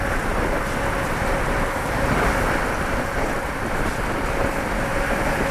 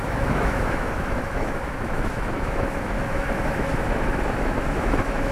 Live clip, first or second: first